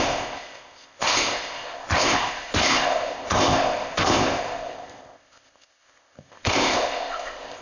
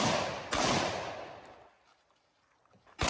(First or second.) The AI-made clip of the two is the first